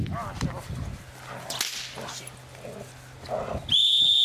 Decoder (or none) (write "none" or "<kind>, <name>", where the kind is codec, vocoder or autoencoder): none